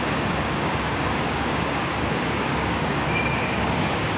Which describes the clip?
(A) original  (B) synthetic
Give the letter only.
B